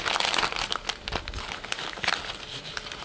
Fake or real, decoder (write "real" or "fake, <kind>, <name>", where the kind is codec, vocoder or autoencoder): real